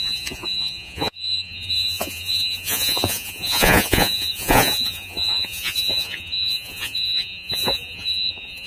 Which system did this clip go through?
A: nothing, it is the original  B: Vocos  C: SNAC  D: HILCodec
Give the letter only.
B